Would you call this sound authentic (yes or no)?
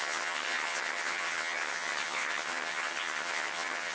no